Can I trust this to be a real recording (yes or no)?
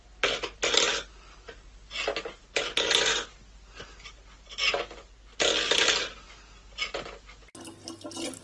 yes